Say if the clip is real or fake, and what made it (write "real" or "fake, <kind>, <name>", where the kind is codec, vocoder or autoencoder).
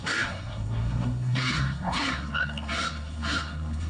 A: fake, codec, SNAC